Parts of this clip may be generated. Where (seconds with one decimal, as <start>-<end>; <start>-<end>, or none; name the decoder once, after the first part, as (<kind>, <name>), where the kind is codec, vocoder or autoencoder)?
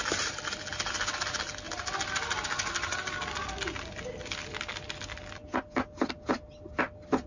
none